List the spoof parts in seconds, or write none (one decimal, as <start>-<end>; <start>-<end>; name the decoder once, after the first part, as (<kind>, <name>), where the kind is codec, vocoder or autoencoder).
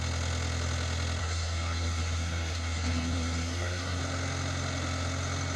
1.2-4.0 (codec, SNAC)